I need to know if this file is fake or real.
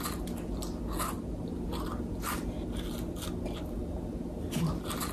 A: real